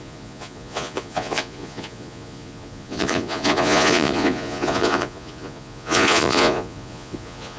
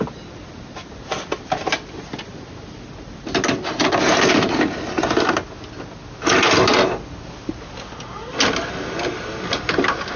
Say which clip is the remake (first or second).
first